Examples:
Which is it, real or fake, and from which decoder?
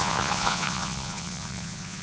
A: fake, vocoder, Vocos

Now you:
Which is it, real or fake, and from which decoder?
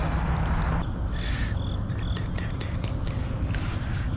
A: real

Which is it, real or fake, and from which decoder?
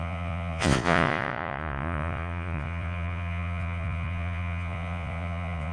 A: fake, vocoder, Vocos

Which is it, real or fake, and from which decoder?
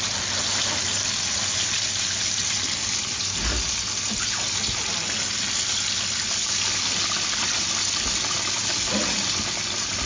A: real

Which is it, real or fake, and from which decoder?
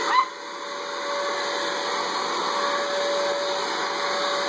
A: real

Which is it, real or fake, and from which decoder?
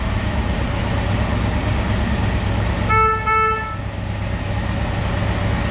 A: real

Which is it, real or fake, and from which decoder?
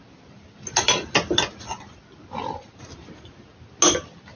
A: real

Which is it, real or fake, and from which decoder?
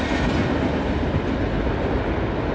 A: real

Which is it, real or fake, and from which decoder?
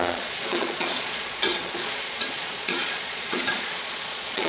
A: fake, vocoder, Vocos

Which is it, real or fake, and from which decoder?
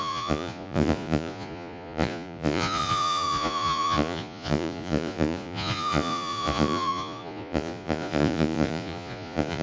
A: fake, vocoder, Vocos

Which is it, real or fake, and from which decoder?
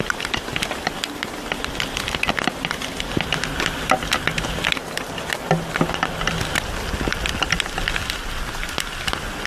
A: real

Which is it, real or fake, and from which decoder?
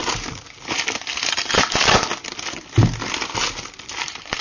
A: real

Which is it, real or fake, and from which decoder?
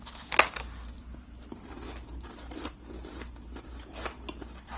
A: fake, vocoder, BigVGAN v2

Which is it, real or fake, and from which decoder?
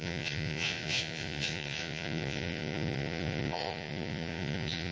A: fake, vocoder, Vocos